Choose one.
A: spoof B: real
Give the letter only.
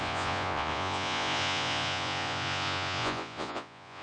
A